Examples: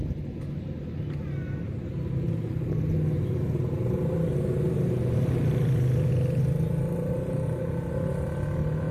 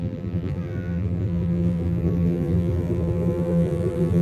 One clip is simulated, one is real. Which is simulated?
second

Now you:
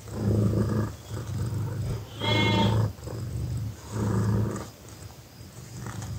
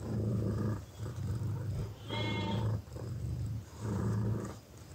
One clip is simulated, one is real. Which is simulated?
second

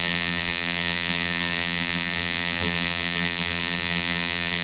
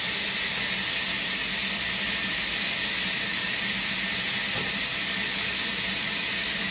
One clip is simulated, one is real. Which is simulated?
first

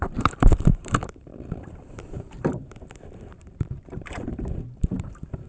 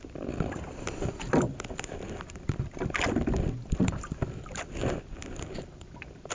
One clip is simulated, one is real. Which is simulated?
first